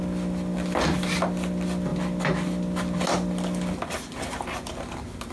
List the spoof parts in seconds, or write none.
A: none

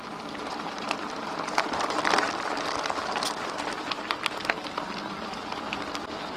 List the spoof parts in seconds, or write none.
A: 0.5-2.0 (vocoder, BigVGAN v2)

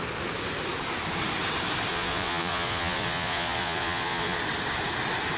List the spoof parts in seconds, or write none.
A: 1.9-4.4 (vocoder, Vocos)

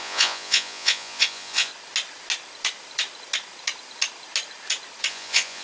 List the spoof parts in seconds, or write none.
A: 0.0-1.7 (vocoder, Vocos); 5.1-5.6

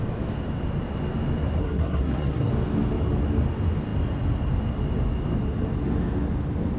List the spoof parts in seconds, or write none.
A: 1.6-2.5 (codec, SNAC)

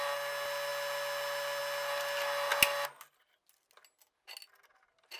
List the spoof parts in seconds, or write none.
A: none